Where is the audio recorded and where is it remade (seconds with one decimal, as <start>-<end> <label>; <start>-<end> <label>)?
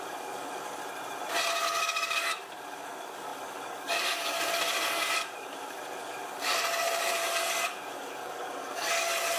0.0-0.8 remade; 0.8-1.6 recorded; 1.6-9.4 remade